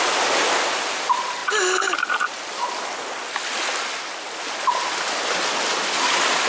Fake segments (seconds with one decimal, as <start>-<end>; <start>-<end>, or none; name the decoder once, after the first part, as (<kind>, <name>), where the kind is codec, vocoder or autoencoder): none